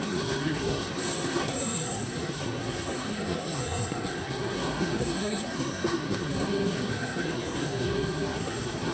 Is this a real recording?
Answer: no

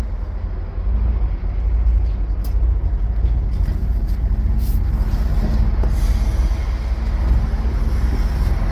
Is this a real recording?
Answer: yes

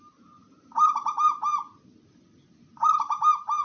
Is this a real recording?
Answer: yes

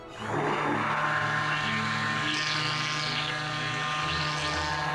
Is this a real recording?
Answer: yes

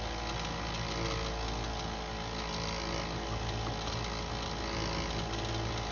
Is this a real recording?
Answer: yes